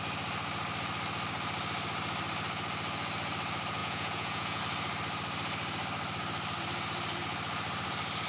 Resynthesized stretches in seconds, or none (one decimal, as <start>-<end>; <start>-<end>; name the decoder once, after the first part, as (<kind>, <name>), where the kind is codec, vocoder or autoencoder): 3.8-4.6 (vocoder, Vocos)